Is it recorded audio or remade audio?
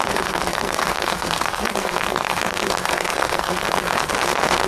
remade